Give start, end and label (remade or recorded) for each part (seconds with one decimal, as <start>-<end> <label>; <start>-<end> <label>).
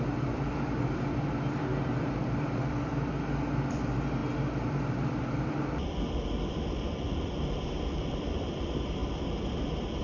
0.0-4.2 remade; 4.2-4.9 recorded; 4.9-10.0 remade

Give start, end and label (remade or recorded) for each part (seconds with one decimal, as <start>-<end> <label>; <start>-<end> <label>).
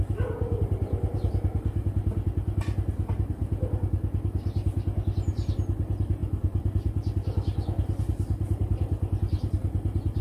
0.0-6.2 recorded; 6.2-10.2 remade